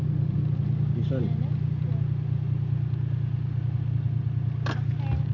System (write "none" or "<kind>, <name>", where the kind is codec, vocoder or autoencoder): none